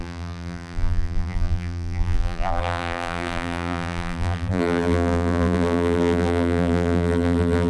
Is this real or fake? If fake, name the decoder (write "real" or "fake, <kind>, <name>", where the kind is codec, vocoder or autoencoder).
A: fake, vocoder, BigVGAN v2